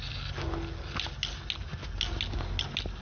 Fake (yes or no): no